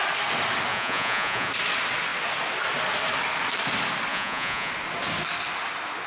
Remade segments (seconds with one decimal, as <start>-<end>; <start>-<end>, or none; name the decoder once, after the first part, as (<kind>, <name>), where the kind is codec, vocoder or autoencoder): 0.7-1.5 (vocoder, Vocos); 4.1-4.7